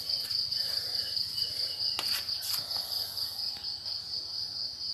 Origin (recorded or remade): recorded